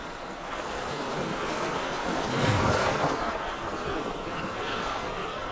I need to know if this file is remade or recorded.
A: remade